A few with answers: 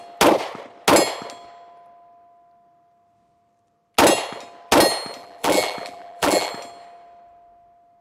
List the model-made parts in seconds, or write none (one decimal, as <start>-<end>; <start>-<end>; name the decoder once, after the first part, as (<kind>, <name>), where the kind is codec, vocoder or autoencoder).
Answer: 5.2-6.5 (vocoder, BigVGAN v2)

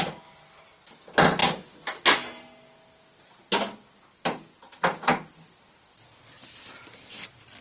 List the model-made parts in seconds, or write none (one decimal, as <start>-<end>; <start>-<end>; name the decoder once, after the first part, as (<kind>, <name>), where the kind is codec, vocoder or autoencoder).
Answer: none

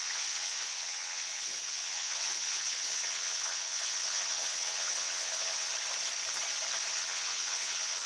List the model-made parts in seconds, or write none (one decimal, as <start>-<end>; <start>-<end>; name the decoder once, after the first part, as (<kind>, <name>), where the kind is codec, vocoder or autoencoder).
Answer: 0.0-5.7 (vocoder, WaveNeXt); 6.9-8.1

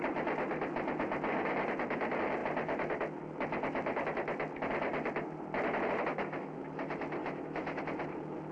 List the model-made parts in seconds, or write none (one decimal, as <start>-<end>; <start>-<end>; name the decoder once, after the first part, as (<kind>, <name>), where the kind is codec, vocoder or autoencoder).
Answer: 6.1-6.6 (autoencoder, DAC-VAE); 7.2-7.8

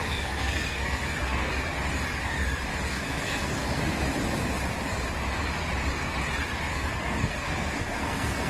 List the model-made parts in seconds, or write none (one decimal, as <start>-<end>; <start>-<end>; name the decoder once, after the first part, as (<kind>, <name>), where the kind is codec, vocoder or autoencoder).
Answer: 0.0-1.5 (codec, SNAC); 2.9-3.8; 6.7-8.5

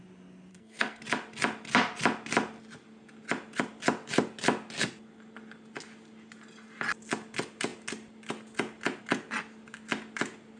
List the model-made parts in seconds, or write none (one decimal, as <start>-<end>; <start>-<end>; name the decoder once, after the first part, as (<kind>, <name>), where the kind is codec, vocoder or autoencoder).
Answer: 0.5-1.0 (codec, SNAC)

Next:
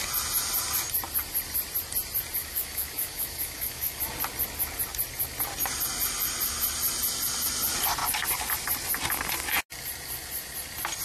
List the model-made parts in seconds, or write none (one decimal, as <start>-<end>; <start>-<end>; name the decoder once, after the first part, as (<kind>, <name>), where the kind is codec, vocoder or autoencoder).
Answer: 2.4-4.0 (autoencoder, DAC-VAE)

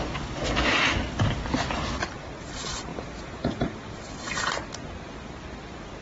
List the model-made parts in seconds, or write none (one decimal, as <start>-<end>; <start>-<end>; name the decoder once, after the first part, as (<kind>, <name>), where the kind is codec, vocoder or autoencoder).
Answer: 2.9-3.6 (vocoder, Vocos)